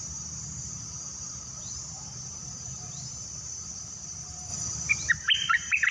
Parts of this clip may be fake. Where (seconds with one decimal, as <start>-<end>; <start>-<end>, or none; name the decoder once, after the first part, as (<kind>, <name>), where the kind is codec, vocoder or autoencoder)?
0.0-4.5 (vocoder, BigVGAN v2); 5.1-5.9